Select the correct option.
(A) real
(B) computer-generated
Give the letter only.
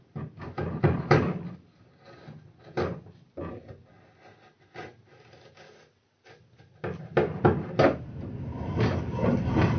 A